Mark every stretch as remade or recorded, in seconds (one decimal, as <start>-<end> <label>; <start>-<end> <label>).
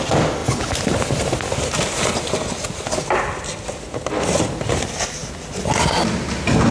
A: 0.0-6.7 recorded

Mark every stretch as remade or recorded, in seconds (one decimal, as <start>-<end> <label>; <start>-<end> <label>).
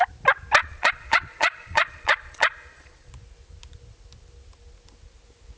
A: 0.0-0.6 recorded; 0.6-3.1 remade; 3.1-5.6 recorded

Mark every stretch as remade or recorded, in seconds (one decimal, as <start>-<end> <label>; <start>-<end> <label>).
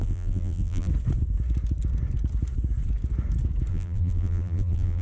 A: 0.0-0.9 remade; 0.9-3.7 recorded; 3.7-5.0 remade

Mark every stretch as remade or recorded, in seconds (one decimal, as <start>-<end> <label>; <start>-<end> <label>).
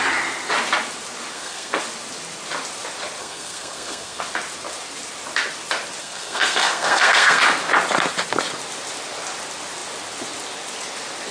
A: 0.0-1.3 recorded; 1.3-1.8 remade; 1.8-3.2 recorded; 3.2-4.2 remade; 4.2-6.0 recorded; 6.0-7.4 remade; 7.4-11.3 recorded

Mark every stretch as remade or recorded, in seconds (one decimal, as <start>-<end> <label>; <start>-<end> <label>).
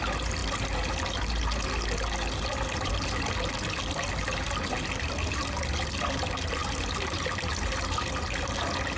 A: 0.0-9.0 recorded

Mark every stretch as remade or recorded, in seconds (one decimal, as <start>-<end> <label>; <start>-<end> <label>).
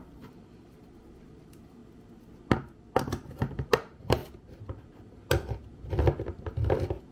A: 0.0-1.8 remade; 1.8-3.0 recorded; 3.0-4.2 remade; 4.2-7.1 recorded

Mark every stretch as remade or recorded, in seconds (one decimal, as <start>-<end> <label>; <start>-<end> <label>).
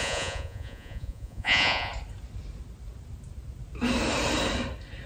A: 0.0-1.9 remade; 1.9-5.1 recorded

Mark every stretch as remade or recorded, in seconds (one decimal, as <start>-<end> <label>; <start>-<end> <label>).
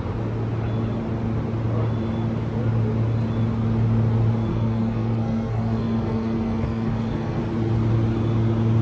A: 0.0-4.5 recorded; 4.5-7.4 remade; 7.4-8.8 recorded